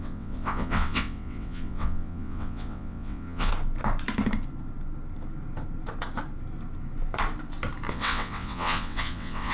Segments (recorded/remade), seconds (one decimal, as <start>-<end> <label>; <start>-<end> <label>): 0.0-3.5 remade; 3.5-7.9 recorded; 7.9-9.5 remade